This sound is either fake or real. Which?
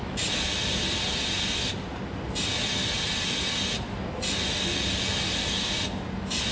real